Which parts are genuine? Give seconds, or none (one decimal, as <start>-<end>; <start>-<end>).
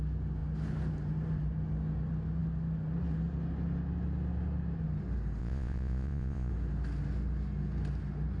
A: 0.0-5.4; 6.5-8.4